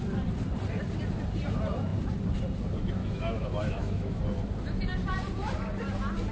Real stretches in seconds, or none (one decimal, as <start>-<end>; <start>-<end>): 0.0-3.0; 4.2-6.3